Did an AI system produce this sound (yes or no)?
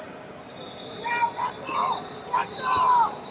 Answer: yes